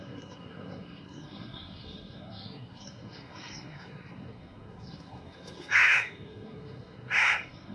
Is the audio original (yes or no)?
no